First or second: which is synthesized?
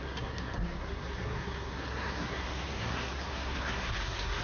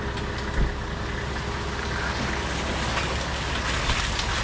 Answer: first